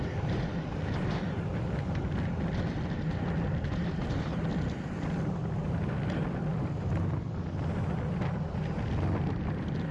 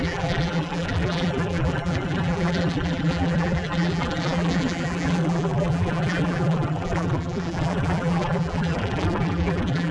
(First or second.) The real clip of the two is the first